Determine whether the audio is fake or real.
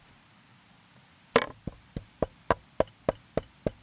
real